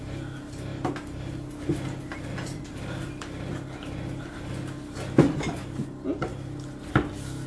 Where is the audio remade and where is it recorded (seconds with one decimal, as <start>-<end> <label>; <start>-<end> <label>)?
0.0-7.5 recorded